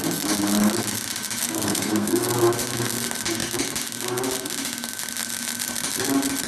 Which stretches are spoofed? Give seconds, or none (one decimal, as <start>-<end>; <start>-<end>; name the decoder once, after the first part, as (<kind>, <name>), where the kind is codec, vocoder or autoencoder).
1.4-2.3 (codec, SNAC)